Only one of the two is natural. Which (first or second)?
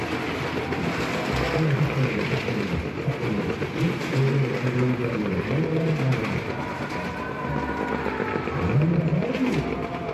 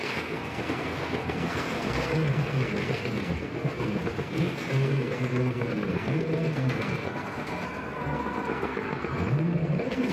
first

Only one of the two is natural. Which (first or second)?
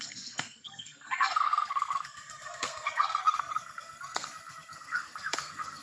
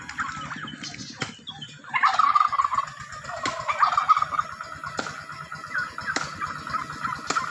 second